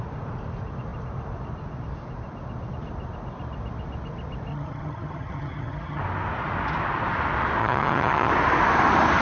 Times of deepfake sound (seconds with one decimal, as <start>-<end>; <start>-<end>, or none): 4.5-6.0; 7.6-8.3